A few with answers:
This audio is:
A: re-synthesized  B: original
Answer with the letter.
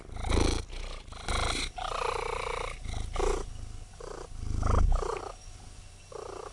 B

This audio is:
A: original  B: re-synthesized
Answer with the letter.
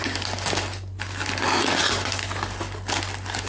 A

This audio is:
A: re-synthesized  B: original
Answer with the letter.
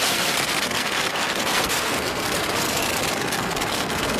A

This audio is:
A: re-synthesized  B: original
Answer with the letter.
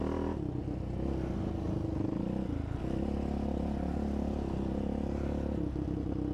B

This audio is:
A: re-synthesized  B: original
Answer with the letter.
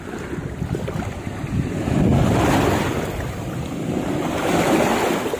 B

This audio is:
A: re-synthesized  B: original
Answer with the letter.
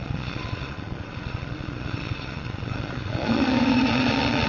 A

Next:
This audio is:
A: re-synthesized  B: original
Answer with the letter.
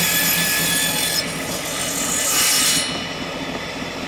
B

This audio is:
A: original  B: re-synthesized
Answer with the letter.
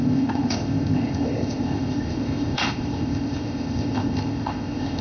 B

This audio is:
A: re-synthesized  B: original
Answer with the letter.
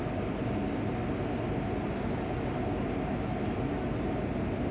B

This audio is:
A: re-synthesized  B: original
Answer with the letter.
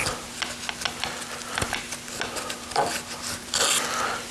B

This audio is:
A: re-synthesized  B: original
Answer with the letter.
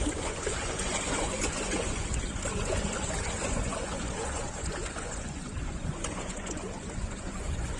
A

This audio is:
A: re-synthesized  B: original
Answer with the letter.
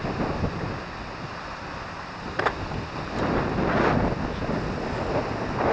B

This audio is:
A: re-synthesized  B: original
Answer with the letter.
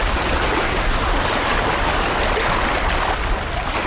B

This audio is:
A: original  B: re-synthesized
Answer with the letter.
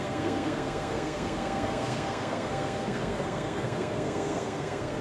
B